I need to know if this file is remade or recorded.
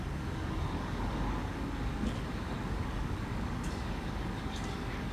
remade